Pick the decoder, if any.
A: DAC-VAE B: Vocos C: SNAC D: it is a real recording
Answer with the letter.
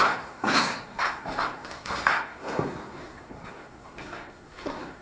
C